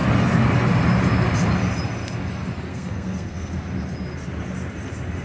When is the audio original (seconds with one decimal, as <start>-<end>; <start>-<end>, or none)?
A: 0.0-2.7; 3.5-5.2